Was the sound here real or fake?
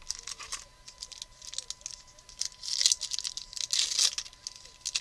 real